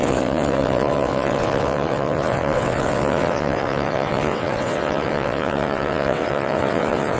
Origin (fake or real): fake